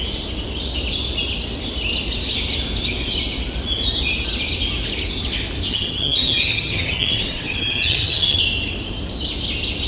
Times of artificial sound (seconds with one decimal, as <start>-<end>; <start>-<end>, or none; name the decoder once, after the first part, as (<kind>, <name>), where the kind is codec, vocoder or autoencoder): 5.7-8.4 (vocoder, HiFi-GAN)